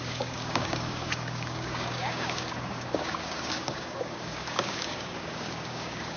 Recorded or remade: remade